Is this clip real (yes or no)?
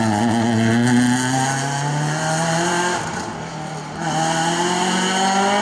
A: yes